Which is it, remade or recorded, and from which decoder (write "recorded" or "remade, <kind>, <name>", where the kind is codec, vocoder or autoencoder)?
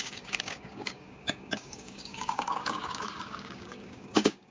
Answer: remade, codec, DAC